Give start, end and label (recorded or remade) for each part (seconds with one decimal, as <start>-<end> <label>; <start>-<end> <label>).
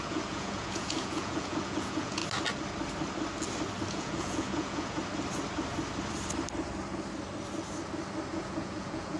0.0-2.2 remade; 2.2-3.9 recorded; 3.9-5.0 remade; 5.0-8.3 recorded; 8.3-9.2 remade